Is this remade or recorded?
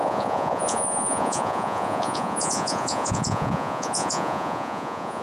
remade